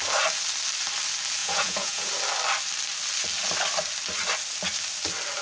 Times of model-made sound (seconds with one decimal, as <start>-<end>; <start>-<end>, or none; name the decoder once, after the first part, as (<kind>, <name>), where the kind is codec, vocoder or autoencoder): 1.4-2.1 (vocoder, Vocos)